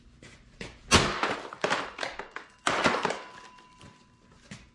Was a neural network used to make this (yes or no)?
no